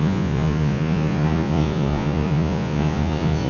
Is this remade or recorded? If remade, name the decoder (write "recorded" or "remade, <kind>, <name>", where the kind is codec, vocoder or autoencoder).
remade, vocoder, Vocos